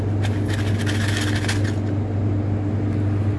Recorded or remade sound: recorded